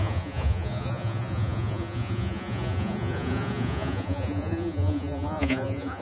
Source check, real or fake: fake